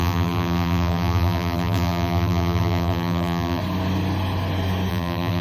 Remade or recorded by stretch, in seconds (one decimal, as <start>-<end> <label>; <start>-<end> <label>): 0.0-3.6 remade; 3.6-4.9 recorded; 4.9-5.4 remade